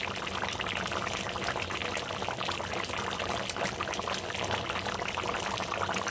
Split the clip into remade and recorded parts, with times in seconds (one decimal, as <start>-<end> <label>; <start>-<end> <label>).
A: 0.0-6.1 recorded